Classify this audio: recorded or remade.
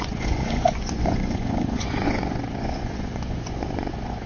remade